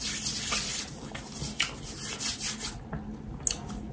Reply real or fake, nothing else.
real